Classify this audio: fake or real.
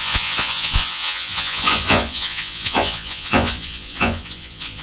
fake